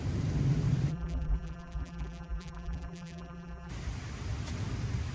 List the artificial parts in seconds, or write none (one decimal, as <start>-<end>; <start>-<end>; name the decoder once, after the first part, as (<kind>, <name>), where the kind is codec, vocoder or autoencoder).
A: 0.9-3.7 (vocoder, BigVGAN v2)